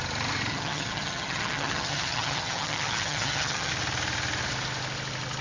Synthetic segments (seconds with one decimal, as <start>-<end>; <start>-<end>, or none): 0.5-3.7